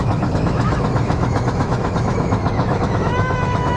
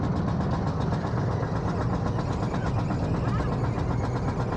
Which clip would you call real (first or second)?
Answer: second